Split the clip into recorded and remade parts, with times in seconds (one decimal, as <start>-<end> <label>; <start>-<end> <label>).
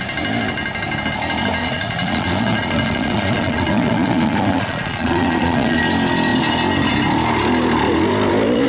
0.0-1.6 recorded; 1.6-5.8 remade; 5.8-8.7 recorded